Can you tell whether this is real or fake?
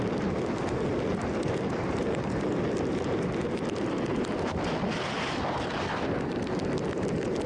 fake